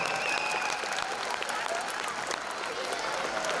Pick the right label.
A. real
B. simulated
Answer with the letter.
A